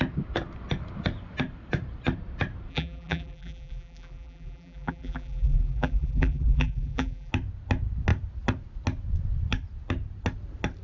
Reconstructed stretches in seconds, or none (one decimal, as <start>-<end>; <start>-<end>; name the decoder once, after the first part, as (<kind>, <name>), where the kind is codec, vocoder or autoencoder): 2.7-7.3 (vocoder, BigVGAN v2)